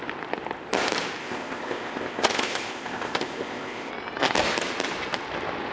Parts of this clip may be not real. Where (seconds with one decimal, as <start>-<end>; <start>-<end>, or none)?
1.2-3.9